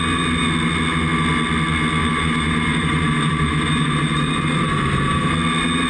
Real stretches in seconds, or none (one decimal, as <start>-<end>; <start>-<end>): 0.0-2.0; 5.3-5.9